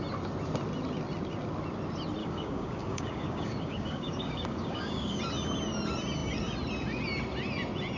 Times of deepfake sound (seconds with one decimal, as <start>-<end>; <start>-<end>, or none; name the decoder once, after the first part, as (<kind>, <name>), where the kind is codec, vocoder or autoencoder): 2.2-5.2 (codec, DAC)